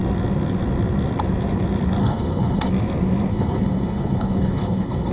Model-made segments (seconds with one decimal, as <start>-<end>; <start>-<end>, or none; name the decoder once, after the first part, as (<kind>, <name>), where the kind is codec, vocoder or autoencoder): 2.0-2.7 (codec, HILCodec); 3.3-5.1